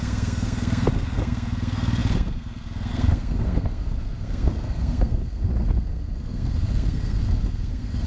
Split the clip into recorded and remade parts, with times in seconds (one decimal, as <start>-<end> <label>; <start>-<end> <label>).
0.0-8.1 remade